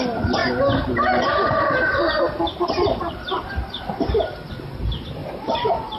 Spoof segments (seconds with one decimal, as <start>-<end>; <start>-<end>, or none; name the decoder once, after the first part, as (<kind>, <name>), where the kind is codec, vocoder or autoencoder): 0.4-3.8 (vocoder, BigVGAN v2); 5.2-6.0